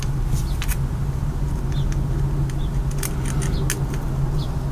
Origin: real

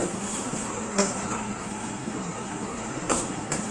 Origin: fake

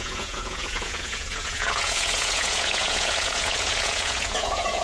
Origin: fake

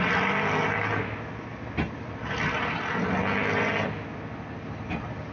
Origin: real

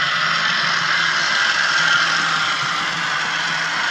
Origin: real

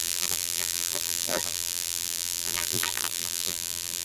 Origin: fake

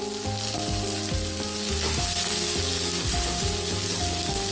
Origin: real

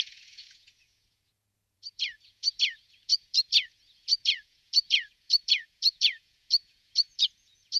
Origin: fake